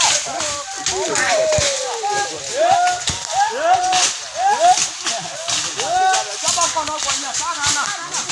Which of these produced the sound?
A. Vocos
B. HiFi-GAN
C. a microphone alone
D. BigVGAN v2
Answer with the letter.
C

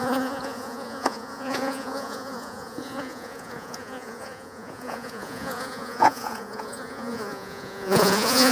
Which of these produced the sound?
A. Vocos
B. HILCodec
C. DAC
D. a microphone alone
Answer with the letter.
A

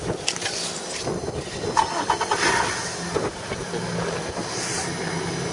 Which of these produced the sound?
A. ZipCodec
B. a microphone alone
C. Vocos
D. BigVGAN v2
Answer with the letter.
B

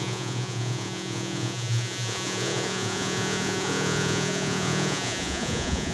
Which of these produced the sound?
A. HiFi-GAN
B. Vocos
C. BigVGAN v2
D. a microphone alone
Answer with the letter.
B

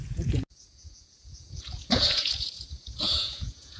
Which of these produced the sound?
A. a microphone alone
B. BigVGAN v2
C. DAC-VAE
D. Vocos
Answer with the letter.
D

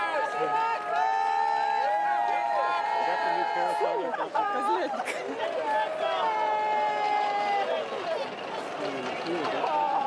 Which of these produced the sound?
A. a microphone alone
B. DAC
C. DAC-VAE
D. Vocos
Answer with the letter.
A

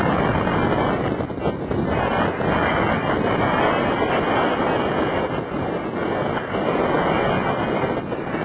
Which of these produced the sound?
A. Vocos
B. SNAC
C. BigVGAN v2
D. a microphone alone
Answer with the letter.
D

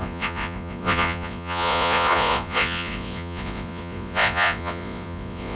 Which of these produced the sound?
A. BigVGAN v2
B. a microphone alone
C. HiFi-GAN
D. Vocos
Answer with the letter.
D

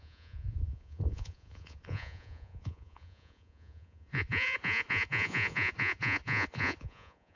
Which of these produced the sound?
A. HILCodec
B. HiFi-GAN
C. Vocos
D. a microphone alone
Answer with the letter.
C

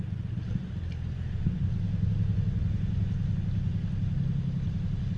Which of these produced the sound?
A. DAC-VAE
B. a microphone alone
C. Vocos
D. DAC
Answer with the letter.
B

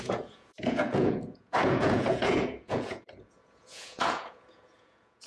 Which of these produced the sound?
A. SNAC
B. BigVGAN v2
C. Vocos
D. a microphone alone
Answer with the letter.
C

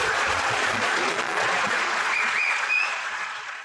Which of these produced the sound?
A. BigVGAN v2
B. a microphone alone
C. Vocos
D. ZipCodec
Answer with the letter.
C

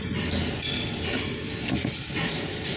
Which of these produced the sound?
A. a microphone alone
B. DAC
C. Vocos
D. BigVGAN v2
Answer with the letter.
A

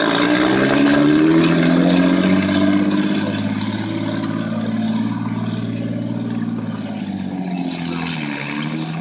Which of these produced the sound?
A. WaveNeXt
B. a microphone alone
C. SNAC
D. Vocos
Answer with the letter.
B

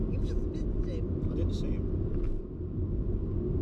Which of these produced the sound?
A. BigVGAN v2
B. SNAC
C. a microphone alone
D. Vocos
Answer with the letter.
C